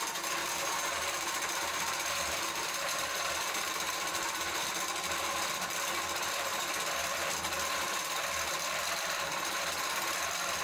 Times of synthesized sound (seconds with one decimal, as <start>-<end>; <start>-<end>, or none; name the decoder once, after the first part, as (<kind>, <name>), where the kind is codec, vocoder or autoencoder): 0.4-4.8 (vocoder, BigVGAN v2)